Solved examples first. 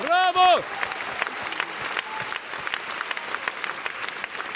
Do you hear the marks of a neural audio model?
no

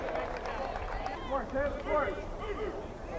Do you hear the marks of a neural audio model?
yes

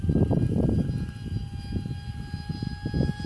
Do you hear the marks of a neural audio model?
no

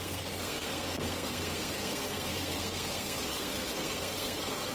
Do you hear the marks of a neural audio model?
yes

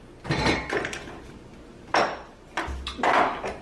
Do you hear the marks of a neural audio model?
no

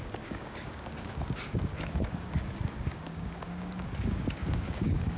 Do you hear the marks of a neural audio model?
yes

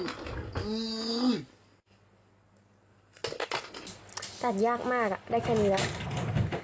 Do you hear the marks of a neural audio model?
no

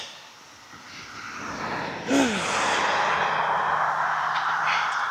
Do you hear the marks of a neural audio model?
no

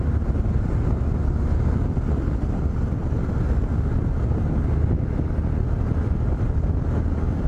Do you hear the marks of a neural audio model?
no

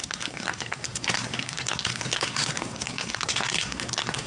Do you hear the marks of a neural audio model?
yes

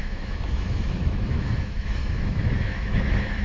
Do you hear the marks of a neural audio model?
yes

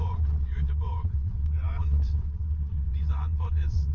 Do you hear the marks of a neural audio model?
yes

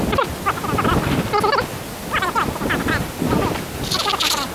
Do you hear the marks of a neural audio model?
no